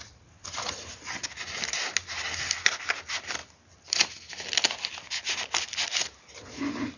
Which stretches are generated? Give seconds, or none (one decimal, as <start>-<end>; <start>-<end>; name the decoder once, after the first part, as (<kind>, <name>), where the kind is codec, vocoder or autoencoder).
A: none